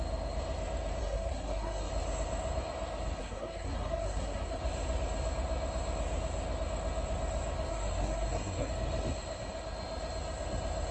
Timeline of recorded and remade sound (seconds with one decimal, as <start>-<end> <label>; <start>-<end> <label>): 0.0-1.0 recorded; 1.0-1.9 remade; 1.9-3.2 recorded; 3.2-4.6 remade; 4.6-7.7 recorded; 7.7-8.7 remade; 8.7-10.9 recorded